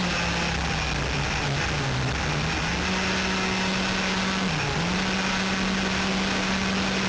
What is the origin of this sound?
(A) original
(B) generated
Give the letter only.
A